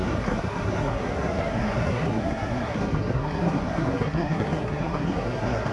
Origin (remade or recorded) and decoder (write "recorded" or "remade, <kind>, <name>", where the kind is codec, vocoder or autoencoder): remade, codec, SNAC